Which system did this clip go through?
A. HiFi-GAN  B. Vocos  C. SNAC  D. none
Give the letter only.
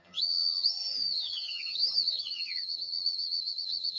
A